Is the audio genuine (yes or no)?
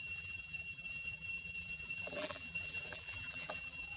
no